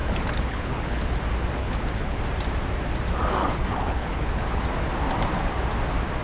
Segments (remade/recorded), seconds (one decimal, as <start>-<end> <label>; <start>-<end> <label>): 0.0-1.0 remade; 1.0-1.6 recorded; 1.6-2.2 remade; 2.2-3.4 recorded; 3.4-4.6 remade; 4.6-6.2 recorded